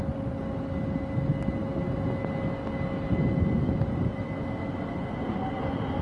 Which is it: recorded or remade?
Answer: recorded